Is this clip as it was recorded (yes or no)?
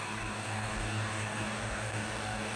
no